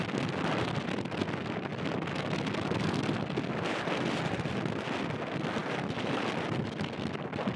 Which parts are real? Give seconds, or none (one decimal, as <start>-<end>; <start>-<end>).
0.0-7.6